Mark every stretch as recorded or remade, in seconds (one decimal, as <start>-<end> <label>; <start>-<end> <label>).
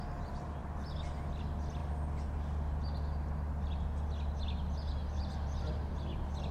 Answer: 0.0-6.5 recorded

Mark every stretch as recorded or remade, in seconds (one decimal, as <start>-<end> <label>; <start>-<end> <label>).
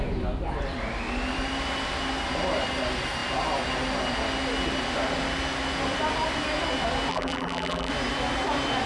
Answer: 0.0-7.1 recorded; 7.1-7.9 remade; 7.9-8.9 recorded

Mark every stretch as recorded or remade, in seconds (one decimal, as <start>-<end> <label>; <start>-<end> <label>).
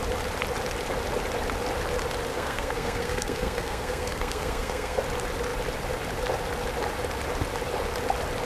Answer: 0.0-2.3 recorded; 2.3-5.0 remade; 5.0-8.5 recorded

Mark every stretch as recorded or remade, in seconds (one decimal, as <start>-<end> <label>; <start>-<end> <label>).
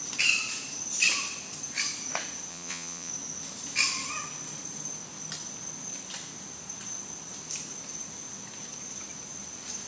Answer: 0.0-2.5 recorded; 2.5-3.1 remade; 3.1-9.9 recorded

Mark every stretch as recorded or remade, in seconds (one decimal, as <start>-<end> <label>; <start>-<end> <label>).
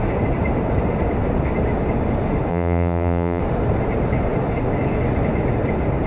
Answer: 0.0-2.5 recorded; 2.5-3.4 remade; 3.4-6.1 recorded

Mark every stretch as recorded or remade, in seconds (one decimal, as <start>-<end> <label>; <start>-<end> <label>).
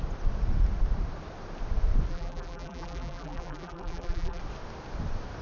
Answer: 0.0-2.1 recorded; 2.1-4.4 remade; 4.4-5.4 recorded